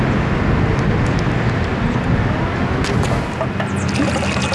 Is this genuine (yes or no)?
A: yes